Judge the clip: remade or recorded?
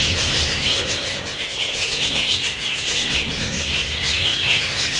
remade